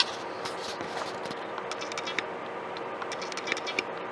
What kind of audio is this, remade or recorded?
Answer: recorded